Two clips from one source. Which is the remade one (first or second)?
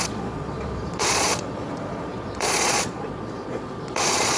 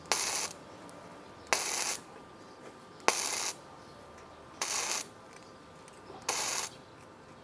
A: first